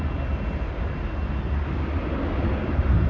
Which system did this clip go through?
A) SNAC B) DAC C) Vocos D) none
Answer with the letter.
D